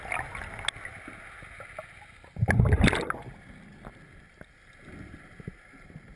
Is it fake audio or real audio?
real